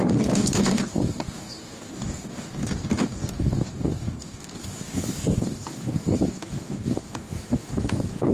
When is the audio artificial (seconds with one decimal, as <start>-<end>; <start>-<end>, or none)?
0.0-8.3